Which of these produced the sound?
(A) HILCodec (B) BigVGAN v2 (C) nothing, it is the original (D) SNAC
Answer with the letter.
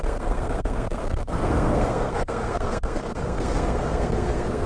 D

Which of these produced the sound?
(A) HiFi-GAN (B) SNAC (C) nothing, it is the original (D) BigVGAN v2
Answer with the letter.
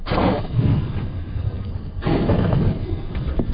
B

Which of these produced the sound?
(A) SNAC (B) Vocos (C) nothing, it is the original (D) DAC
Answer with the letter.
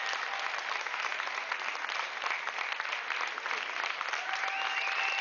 C